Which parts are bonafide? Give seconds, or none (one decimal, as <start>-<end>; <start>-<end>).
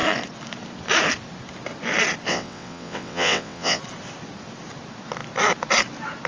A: 0.0-2.3; 3.8-6.3